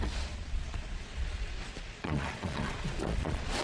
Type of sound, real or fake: fake